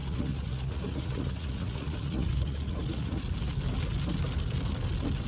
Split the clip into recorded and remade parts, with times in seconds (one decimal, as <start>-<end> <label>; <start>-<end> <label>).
0.0-3.2 remade; 3.2-5.3 recorded